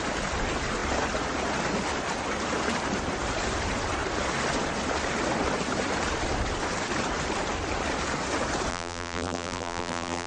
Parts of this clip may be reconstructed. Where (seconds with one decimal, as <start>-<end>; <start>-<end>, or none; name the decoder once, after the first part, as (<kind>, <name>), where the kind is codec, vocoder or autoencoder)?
8.7-10.3 (vocoder, BigVGAN v2)